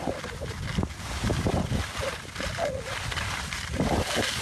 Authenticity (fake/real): real